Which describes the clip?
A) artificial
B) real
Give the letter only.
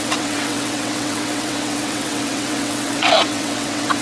A